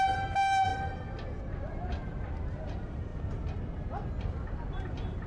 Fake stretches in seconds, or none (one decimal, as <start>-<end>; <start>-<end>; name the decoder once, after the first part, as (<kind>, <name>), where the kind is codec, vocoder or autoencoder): 0.0-0.7 (vocoder, BigVGAN v2); 1.5-3.1; 4.2-5.3